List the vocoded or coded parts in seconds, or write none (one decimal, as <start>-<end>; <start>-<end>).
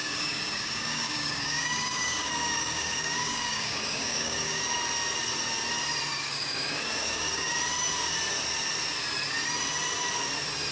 0.0-4.6; 6.1-7.5